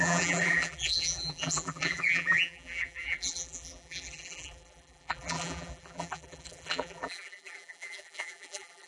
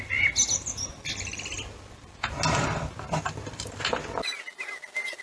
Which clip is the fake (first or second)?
first